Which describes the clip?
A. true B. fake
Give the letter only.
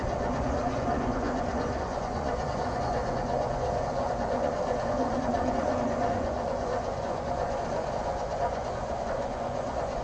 B